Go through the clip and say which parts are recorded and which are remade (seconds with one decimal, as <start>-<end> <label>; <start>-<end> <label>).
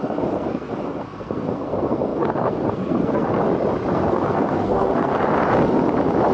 0.0-3.4 remade; 3.4-3.9 recorded; 3.9-5.1 remade; 5.1-6.3 recorded